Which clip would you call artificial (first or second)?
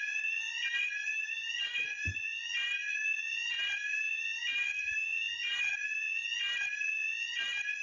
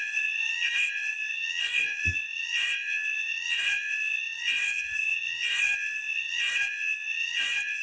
second